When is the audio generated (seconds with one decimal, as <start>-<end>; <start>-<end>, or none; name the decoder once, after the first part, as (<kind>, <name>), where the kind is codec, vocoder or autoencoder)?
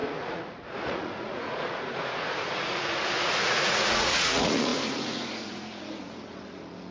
0.0-6.9 (vocoder, Vocos)